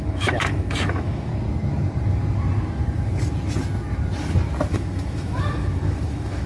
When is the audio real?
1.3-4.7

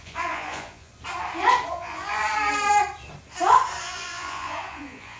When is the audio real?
0.9-1.7; 2.2-3.8

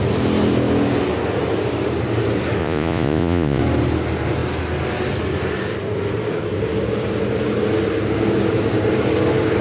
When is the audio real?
0.0-2.6; 3.6-9.6

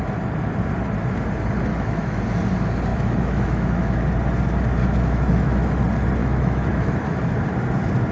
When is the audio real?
0.0-1.7; 2.2-2.9; 4.0-4.8; 5.8-6.2; 7.2-8.1

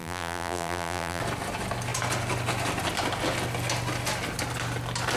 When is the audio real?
1.2-5.2

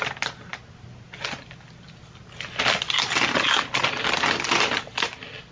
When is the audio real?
0.0-5.5

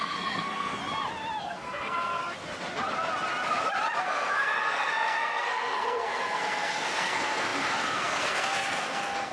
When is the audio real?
0.8-1.4; 2.2-4.0

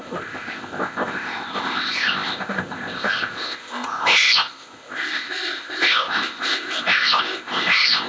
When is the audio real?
none